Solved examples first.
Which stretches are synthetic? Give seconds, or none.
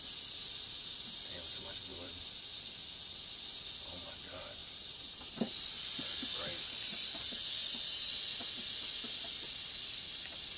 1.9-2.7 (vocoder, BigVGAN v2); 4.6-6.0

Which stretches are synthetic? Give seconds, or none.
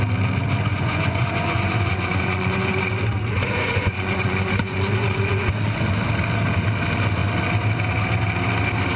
0.7-2.9 (vocoder, Vocos); 3.4-5.8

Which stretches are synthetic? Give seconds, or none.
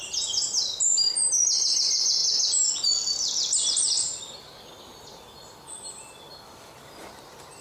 none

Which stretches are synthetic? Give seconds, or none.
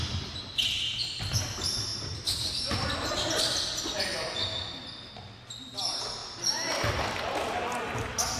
none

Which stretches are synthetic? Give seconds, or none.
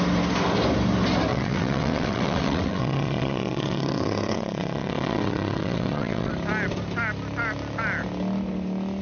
1.3-6.3 (vocoder, WaveNeXt)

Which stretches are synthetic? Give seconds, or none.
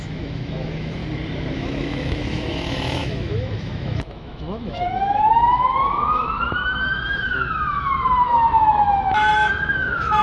0.0-1.0 (autoencoder, DAC-VAE); 1.5-10.2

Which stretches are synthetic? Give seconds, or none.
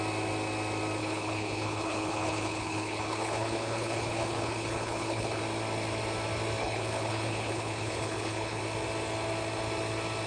1.0-5.4 (codec, HILCodec); 6.6-8.6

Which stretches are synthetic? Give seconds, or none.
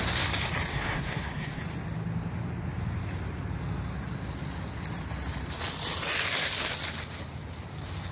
0.7-1.6 (codec, SNAC)